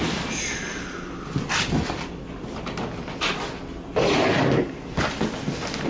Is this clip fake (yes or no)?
no